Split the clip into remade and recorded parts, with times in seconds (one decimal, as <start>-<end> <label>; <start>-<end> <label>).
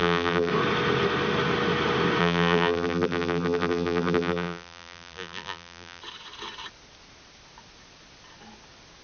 0.0-0.5 remade; 0.5-2.2 recorded; 2.2-6.0 remade; 6.0-9.0 recorded